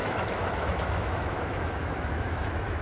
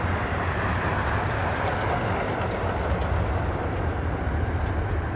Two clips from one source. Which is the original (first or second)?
second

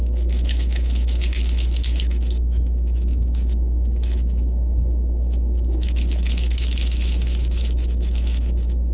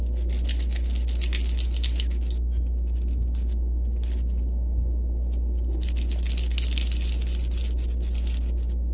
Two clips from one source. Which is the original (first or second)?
second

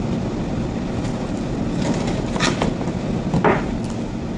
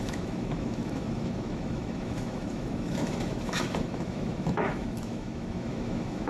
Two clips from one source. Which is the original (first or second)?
first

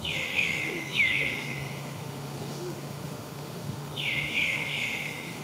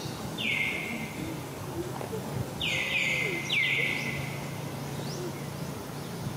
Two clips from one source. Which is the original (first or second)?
second